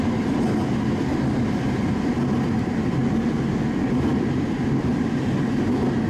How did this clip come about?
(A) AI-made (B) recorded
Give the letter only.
B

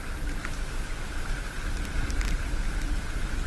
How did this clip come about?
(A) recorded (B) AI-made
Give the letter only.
A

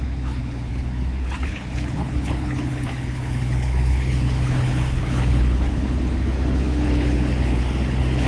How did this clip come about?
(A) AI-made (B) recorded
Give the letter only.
A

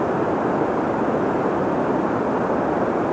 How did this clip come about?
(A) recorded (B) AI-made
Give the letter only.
A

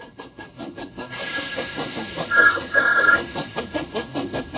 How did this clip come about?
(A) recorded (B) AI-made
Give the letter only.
B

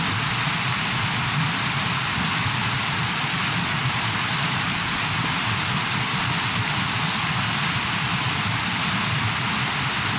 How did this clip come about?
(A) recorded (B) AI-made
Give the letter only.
A